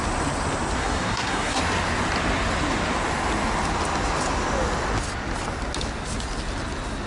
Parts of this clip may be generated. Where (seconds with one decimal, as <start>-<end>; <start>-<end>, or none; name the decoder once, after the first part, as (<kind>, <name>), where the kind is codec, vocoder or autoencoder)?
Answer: 0.8-1.6 (codec, SNAC)